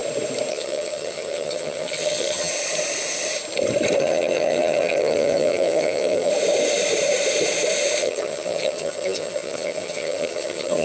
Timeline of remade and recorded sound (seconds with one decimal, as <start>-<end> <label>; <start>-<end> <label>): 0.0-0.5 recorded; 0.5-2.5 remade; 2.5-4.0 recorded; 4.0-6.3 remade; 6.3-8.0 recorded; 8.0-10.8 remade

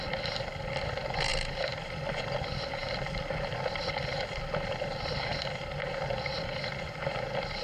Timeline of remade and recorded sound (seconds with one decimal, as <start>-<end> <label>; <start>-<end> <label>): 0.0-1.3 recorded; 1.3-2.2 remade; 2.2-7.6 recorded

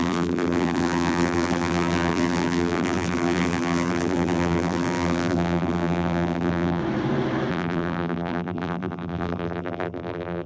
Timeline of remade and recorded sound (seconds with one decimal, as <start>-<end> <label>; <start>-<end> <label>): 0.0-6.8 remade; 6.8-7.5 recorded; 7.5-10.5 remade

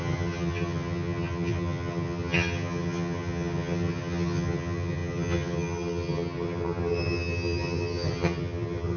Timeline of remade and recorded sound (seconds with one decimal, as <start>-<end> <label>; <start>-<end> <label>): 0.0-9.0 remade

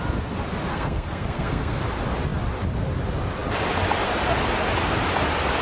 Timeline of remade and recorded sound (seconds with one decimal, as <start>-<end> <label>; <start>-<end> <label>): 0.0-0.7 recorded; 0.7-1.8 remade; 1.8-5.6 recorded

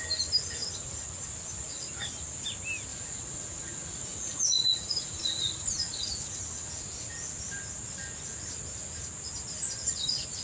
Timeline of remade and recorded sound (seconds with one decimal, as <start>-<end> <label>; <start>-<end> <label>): 0.0-0.6 recorded; 0.6-1.2 remade; 1.2-2.9 recorded; 2.9-6.7 remade; 6.7-10.4 recorded